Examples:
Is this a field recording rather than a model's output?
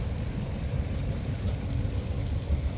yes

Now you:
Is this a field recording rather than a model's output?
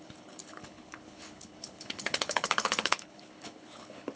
no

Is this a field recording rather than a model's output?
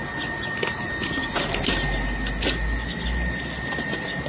yes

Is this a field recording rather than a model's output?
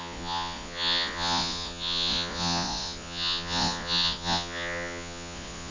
no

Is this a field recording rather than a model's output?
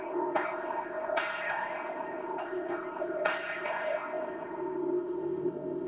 no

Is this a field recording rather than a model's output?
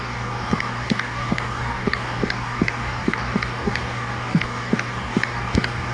no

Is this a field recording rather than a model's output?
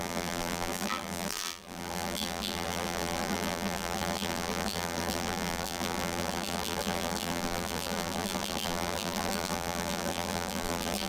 no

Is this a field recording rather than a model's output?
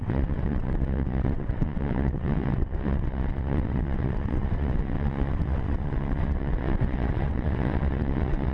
no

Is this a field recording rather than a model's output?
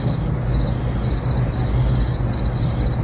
yes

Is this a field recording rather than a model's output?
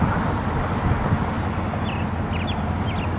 yes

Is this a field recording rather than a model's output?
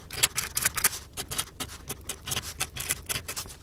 no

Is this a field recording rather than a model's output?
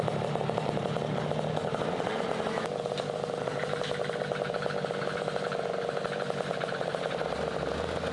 yes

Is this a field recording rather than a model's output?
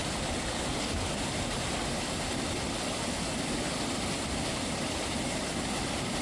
yes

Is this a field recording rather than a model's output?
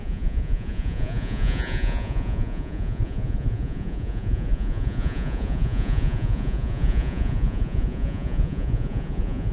no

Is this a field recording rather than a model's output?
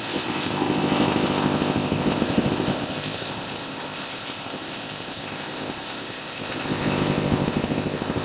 no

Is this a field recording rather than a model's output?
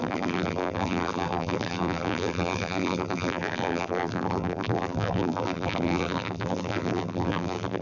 no